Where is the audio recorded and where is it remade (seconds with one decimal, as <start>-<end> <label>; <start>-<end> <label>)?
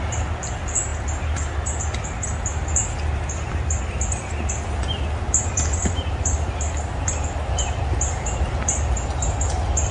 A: 0.0-9.9 recorded